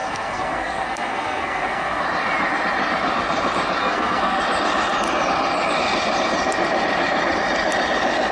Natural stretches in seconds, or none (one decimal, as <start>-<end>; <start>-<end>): 2.0-3.8; 4.4-8.3